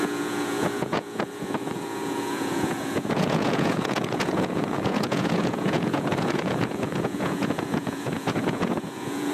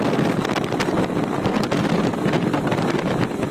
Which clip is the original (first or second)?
second